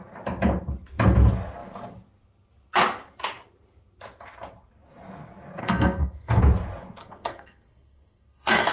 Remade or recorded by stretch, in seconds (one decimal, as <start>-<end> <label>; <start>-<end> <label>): 0.0-5.6 recorded; 5.6-6.4 remade; 6.4-7.0 recorded; 7.0-8.7 remade

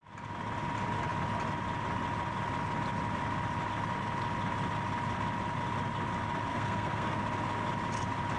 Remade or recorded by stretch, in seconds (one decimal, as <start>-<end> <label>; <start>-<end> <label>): 0.0-6.5 recorded; 6.5-7.2 remade; 7.2-8.4 recorded